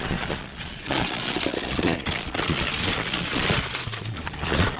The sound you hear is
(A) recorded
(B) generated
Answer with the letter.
B